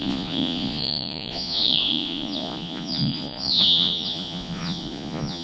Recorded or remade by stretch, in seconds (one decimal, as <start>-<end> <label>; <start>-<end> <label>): 0.0-5.4 remade

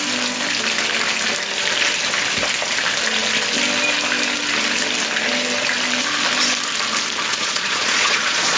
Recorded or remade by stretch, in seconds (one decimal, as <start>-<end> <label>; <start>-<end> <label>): 0.0-7.3 recorded; 7.3-8.6 remade

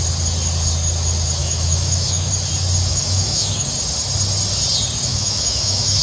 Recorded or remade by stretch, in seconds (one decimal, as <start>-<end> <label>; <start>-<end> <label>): 0.0-1.4 recorded; 1.4-2.3 remade; 2.3-2.9 recorded; 2.9-3.7 remade; 3.7-5.1 recorded; 5.1-6.0 remade

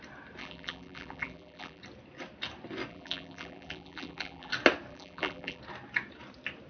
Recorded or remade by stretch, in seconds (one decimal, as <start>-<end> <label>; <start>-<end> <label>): 0.0-0.4 recorded; 0.4-1.8 remade; 1.8-2.9 recorded; 2.9-4.5 remade; 4.5-4.9 recorded; 4.9-5.6 remade; 5.6-6.7 recorded

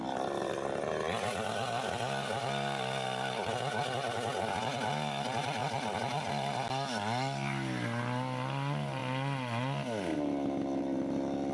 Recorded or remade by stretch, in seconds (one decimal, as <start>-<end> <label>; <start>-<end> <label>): 0.0-11.5 recorded